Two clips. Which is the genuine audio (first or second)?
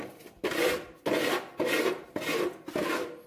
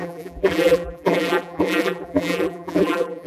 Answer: first